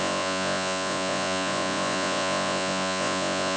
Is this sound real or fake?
fake